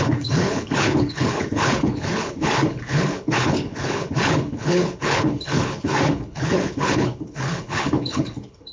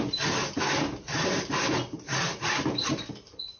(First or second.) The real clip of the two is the second